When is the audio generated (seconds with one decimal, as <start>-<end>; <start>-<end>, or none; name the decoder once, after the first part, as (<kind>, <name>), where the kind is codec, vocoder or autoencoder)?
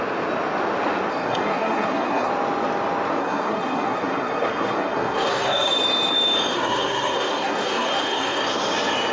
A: 1.1-2.3 (codec, SNAC); 3.2-5.7; 6.5-8.4